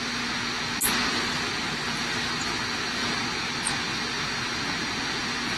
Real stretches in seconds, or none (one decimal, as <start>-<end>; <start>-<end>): 0.0-1.1; 1.9-5.6